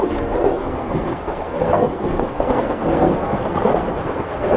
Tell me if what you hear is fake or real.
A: fake